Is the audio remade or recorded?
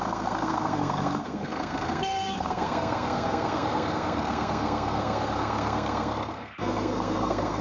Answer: remade